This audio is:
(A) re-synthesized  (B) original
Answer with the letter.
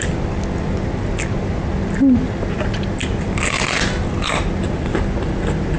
B